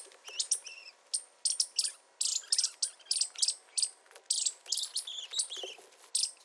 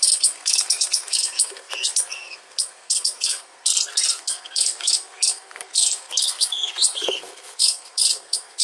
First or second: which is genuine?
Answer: first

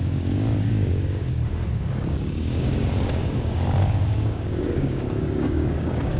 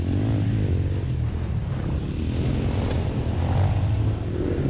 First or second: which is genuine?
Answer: second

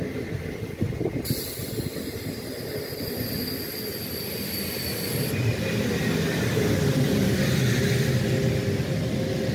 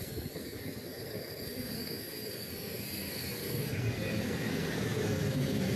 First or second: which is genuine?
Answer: first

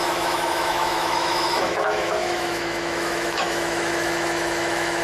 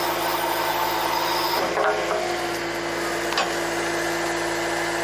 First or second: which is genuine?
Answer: second